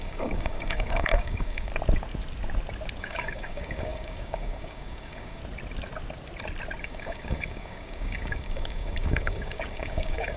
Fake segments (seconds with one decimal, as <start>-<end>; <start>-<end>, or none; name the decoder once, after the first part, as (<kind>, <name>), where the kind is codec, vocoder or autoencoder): 0.0-1.7 (codec, DAC); 3.0-5.4; 6.8-10.4